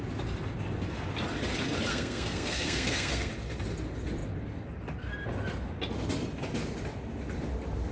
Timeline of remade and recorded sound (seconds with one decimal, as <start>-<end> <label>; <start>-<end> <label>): 0.0-1.9 recorded; 1.9-3.3 remade; 3.3-7.9 recorded